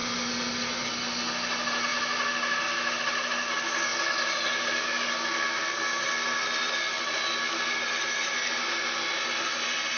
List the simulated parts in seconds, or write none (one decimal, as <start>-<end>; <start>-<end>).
none